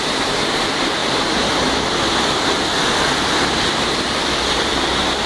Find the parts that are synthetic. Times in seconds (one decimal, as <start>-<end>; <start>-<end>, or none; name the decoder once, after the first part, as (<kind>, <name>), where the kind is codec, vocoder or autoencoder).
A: 1.0-4.2 (vocoder, BigVGAN v2)